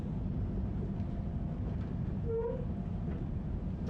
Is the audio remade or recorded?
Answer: recorded